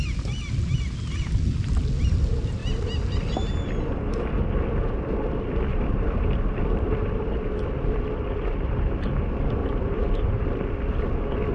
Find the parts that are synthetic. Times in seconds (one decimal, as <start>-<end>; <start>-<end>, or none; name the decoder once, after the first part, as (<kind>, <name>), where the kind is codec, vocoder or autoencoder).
5.7-7.9 (vocoder, BigVGAN v2); 9.6-10.7